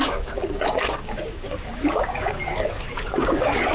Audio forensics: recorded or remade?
remade